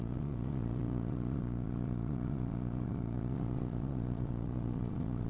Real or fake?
fake